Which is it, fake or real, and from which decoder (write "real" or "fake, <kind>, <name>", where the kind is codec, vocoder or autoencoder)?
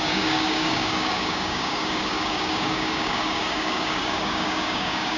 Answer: fake, codec, DAC